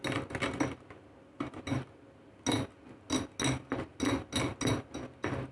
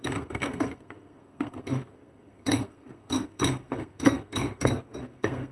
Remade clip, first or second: second